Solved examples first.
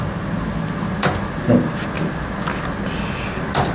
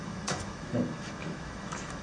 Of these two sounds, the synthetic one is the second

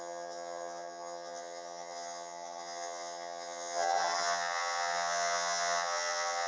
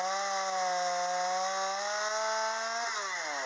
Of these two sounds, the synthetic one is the first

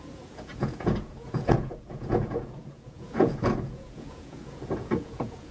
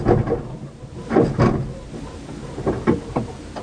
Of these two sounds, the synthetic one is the first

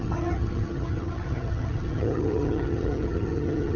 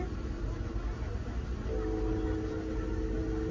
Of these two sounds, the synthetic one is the first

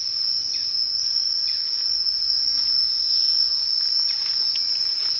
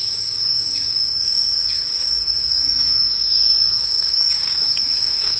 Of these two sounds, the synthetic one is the second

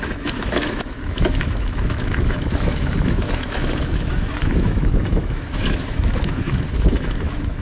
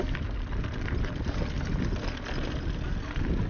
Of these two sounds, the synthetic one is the first